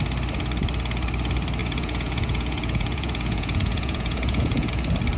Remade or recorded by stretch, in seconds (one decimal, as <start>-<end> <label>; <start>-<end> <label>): 0.0-1.6 recorded; 1.6-4.7 remade; 4.7-5.2 recorded